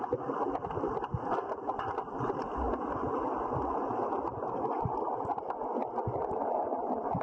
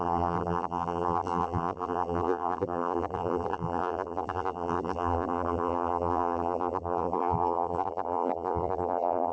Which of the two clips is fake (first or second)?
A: second